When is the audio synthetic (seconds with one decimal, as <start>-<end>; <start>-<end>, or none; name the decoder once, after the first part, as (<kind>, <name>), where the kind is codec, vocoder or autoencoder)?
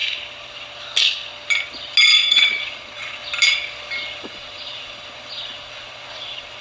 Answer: 2.3-3.2 (vocoder, Vocos); 4.2-6.6